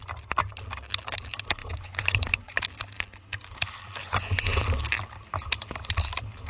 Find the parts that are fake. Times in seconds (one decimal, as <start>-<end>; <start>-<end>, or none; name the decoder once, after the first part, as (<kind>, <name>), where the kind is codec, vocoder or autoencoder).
1.6-2.6 (vocoder, Vocos); 4.0-4.6